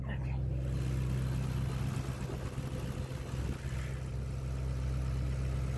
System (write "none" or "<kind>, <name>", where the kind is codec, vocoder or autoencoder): none